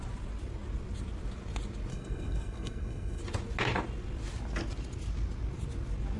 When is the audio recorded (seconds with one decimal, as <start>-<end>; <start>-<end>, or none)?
0.0-1.9; 3.2-6.2